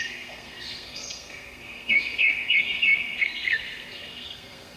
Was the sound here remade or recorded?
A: remade